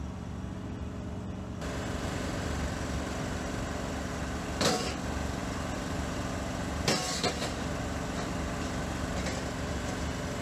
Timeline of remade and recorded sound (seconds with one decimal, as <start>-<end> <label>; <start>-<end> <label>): 0.0-10.4 recorded